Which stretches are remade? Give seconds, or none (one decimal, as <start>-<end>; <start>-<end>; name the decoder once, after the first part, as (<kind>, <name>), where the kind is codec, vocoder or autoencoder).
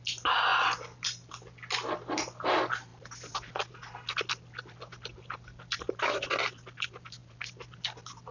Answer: none